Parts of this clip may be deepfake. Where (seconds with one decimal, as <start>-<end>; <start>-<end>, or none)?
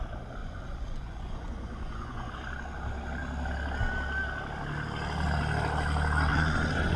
0.4-2.3; 6.3-7.0